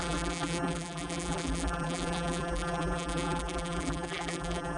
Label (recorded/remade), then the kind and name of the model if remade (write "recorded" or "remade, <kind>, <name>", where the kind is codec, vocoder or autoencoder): remade, vocoder, BigVGAN v2